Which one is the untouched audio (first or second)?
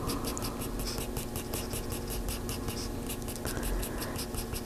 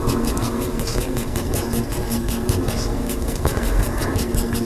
first